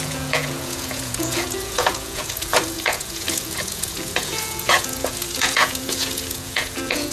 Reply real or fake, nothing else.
fake